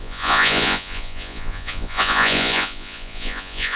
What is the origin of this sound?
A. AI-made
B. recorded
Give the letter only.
A